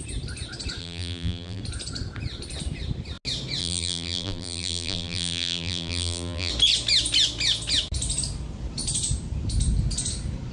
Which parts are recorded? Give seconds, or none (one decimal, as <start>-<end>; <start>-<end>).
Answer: 0.0-0.8; 1.6-3.6; 6.5-10.5